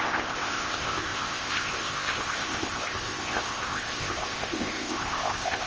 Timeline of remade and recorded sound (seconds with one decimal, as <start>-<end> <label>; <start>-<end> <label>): 0.0-5.7 remade